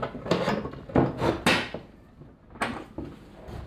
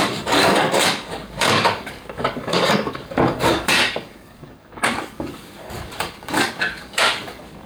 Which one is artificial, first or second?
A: second